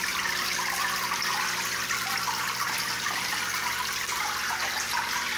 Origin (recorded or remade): recorded